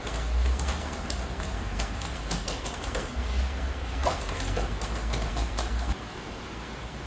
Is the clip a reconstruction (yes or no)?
yes